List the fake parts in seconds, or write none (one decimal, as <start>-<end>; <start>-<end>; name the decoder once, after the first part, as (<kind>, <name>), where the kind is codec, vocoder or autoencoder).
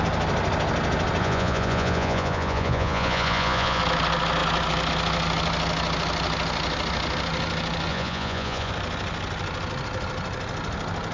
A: 1.2-3.8 (vocoder, Vocos); 7.9-8.7